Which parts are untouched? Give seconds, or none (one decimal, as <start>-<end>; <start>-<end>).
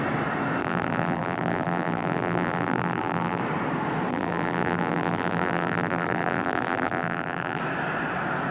0.0-0.6; 3.4-4.1; 7.6-8.5